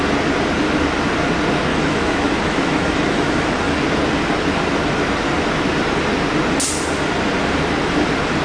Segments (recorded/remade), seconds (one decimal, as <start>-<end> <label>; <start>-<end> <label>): 0.0-1.7 recorded; 1.7-3.8 remade; 3.8-8.4 recorded